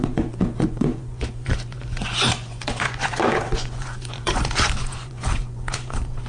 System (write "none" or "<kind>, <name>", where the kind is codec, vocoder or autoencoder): vocoder, Vocos